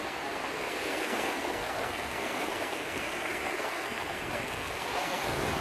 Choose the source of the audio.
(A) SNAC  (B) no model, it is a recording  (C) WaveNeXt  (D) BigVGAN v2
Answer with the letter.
A